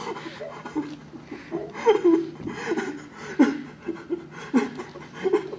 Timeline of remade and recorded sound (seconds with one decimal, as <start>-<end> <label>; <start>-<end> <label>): 0.0-5.6 recorded